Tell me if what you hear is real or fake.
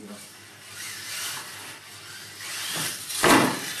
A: real